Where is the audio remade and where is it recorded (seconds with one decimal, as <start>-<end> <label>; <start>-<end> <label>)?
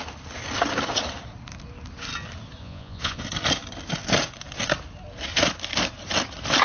0.0-2.6 recorded; 2.6-3.2 remade; 3.2-6.6 recorded